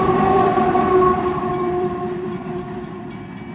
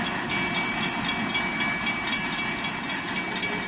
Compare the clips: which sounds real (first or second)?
second